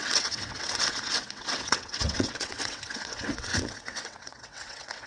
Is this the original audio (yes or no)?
no